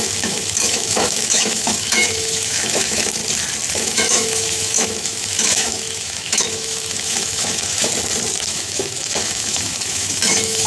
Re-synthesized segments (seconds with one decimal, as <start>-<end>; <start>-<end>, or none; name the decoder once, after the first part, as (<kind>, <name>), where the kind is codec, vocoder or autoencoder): 0.0-3.2 (autoencoder, DAC-VAE); 3.7-7.9; 8.5-10.7